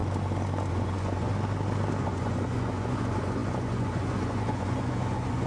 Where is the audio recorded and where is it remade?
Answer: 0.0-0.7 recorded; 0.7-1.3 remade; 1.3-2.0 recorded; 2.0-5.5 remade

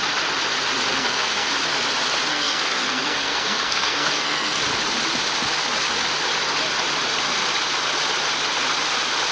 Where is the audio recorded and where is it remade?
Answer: 0.0-0.9 recorded; 0.9-1.5 remade; 1.5-2.3 recorded; 2.3-4.6 remade; 4.6-9.3 recorded